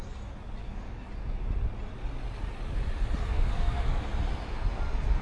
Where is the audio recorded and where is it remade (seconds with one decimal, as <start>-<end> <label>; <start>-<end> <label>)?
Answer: 0.0-0.6 recorded; 0.6-1.1 remade; 1.1-3.3 recorded; 3.3-4.1 remade; 4.1-5.2 recorded